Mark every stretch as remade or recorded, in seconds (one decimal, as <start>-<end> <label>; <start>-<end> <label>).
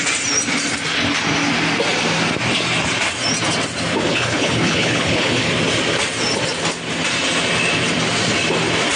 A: 0.0-4.1 recorded; 4.1-5.5 remade; 5.5-9.0 recorded